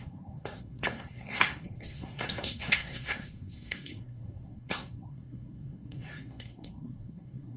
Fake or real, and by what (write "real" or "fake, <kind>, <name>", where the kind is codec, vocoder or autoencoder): fake, codec, SNAC